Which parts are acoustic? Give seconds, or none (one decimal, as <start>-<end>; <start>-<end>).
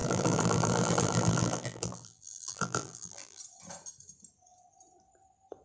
3.4-5.6